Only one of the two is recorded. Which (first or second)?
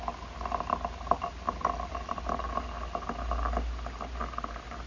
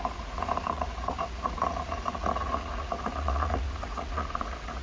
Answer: first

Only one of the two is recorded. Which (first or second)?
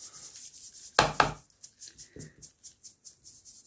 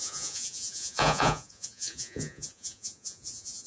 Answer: first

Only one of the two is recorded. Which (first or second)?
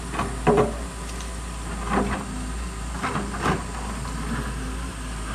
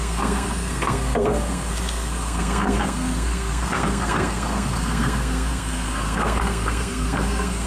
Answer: first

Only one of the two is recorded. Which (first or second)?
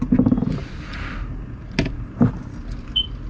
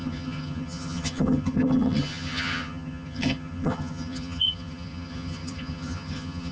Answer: first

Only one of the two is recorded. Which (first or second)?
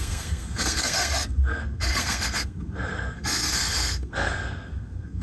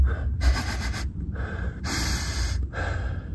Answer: second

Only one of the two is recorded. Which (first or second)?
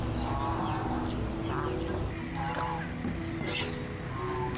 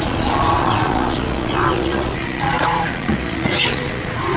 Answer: first